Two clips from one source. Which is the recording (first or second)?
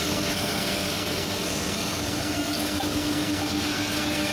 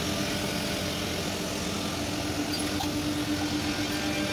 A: second